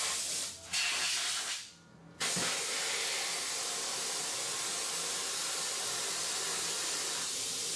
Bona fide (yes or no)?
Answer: yes